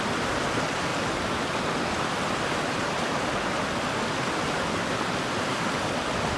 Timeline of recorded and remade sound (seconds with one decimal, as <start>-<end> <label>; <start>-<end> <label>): 0.0-6.4 recorded

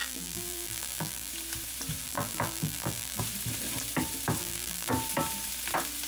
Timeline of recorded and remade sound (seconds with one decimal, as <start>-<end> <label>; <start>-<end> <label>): 0.0-1.3 remade; 1.3-2.0 recorded; 2.0-3.2 remade; 3.2-4.4 recorded; 4.4-4.9 remade; 4.9-6.1 recorded